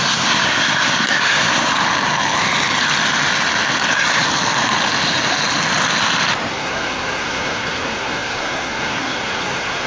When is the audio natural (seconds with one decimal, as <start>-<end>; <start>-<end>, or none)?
1.7-6.5